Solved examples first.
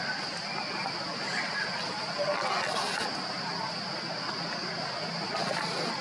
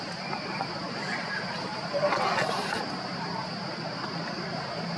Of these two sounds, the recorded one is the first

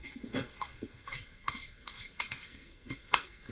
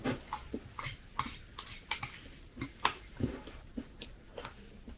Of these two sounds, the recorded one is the second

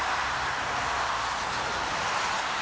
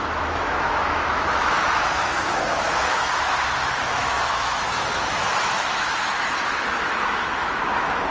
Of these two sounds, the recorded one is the first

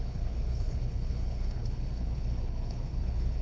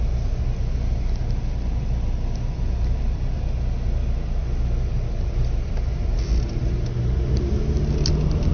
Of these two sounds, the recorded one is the second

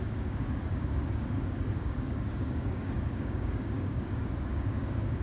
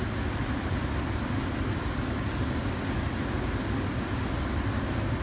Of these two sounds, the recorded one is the second